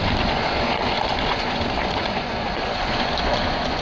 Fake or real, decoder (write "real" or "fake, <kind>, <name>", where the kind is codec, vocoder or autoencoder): fake, vocoder, Vocos